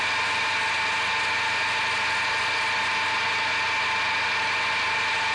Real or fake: real